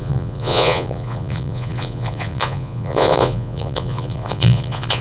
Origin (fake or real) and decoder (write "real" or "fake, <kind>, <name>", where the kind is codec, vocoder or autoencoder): fake, vocoder, Vocos